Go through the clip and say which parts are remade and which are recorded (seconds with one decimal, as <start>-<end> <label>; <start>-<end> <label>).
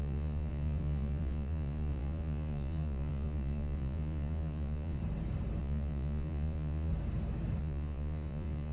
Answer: 0.0-5.0 remade; 5.0-5.6 recorded; 5.6-6.9 remade; 6.9-7.6 recorded; 7.6-8.7 remade